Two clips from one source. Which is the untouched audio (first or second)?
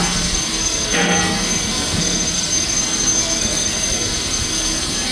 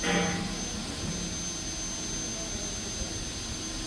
second